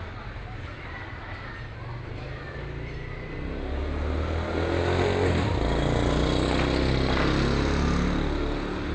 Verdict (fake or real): real